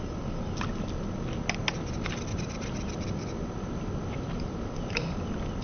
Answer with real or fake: real